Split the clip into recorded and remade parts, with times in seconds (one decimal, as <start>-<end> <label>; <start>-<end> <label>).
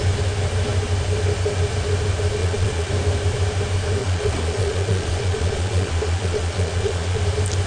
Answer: 0.0-2.4 recorded; 2.4-2.9 remade; 2.9-4.0 recorded; 4.0-7.2 remade; 7.2-7.7 recorded